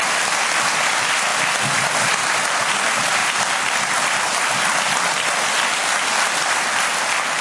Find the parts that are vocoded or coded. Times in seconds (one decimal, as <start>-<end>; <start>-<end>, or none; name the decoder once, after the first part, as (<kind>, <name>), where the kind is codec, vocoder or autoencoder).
1.3-2.1 (vocoder, BigVGAN v2); 3.2-4.5; 5.8-7.4